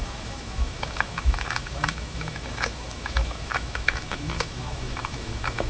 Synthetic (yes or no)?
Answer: yes